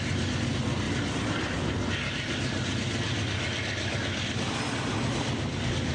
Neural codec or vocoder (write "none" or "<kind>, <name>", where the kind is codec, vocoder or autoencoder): none